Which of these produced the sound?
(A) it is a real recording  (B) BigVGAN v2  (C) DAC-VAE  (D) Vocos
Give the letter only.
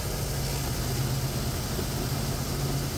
A